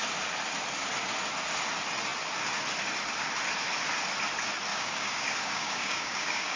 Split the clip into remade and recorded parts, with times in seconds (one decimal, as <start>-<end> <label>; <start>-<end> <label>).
0.0-4.7 recorded; 4.7-6.6 remade